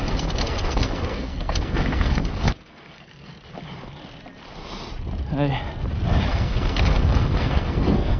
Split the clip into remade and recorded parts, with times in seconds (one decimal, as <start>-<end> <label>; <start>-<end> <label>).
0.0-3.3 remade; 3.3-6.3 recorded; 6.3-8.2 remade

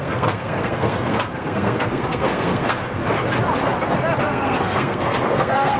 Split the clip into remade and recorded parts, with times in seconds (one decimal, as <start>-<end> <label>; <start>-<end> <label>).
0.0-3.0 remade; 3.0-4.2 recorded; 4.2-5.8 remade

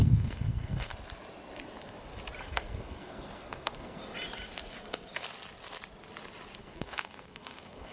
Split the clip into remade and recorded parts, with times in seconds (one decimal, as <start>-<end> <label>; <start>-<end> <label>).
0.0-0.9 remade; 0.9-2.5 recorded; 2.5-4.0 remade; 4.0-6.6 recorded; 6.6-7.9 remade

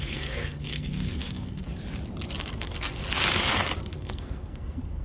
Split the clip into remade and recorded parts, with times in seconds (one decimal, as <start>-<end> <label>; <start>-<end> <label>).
0.0-1.7 remade; 1.7-2.4 recorded; 2.4-3.0 remade; 3.0-3.9 recorded; 3.9-5.0 remade